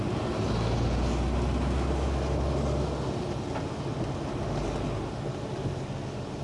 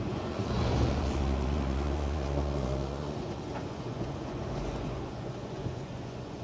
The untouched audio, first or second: first